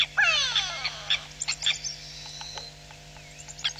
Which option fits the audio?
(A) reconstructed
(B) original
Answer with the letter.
B